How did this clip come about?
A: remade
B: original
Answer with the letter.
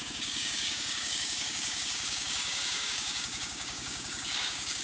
A